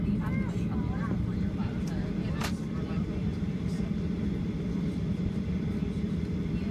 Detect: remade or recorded recorded